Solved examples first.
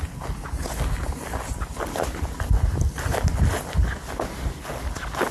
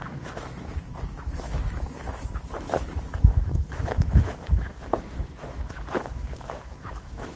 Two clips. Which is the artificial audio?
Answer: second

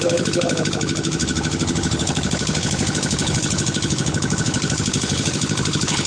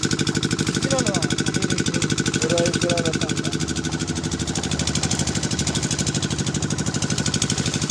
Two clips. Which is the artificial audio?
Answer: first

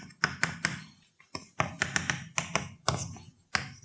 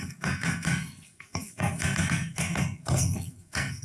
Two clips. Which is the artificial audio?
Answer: second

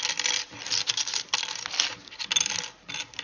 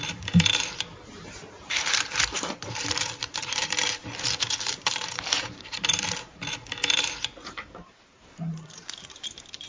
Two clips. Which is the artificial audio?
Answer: second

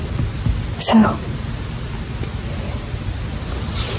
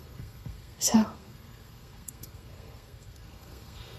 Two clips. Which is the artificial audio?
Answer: second